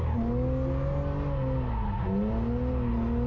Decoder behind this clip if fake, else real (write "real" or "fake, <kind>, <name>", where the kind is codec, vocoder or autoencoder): real